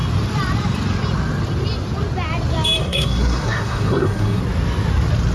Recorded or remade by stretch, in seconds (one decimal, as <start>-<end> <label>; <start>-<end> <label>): 0.0-2.8 recorded; 2.8-4.4 remade; 4.4-5.3 recorded